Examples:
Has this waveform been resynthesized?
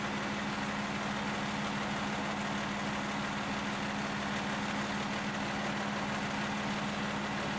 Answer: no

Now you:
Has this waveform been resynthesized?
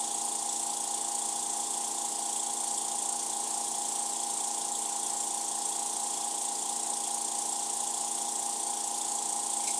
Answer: no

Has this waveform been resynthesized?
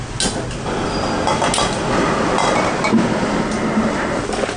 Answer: no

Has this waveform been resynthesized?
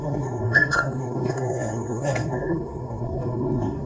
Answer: yes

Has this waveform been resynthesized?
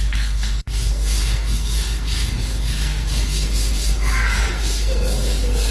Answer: yes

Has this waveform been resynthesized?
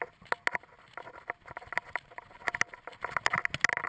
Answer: no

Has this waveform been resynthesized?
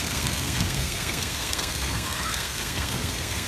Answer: yes